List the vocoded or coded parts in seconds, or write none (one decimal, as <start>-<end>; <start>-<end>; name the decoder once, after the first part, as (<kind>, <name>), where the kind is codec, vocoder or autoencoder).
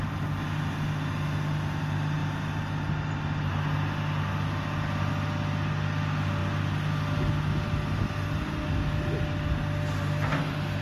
none